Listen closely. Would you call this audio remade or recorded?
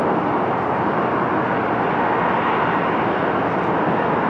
recorded